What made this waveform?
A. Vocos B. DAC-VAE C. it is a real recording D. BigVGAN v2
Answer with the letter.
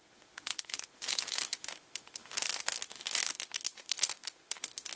B